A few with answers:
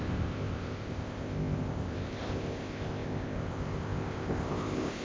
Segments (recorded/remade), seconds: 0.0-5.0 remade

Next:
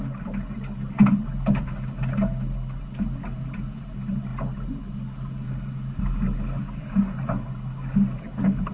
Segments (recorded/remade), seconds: 0.0-8.7 recorded